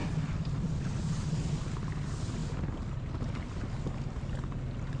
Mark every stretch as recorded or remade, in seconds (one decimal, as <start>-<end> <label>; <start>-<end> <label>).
0.0-1.5 remade; 1.5-5.0 recorded

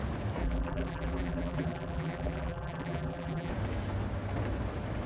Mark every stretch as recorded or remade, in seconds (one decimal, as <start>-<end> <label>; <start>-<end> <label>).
0.0-0.4 recorded; 0.4-3.5 remade; 3.5-5.1 recorded

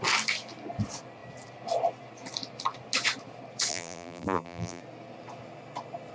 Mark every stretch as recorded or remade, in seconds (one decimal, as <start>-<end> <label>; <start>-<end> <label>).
0.0-3.7 recorded; 3.7-4.8 remade; 4.8-6.1 recorded

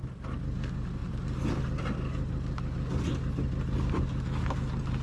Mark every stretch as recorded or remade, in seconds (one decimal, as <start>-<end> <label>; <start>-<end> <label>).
0.0-5.0 recorded

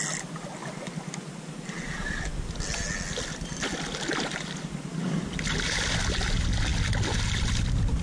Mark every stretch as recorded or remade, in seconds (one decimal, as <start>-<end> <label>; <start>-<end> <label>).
0.0-8.0 recorded

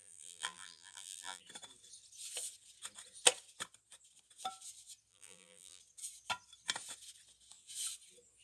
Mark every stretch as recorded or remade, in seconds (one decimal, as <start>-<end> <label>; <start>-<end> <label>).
0.0-1.4 remade; 1.4-5.1 recorded; 5.1-5.8 remade; 5.8-8.4 recorded

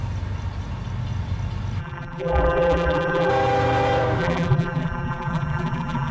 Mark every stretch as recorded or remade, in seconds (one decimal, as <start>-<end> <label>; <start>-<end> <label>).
0.0-1.8 recorded; 1.8-3.3 remade; 3.3-4.2 recorded; 4.2-6.1 remade